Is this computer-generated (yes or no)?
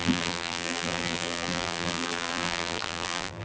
yes